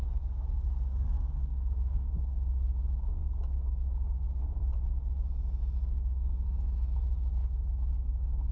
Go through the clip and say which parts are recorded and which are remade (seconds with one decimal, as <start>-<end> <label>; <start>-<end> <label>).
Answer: 0.0-1.1 recorded; 1.1-2.1 remade; 2.1-8.5 recorded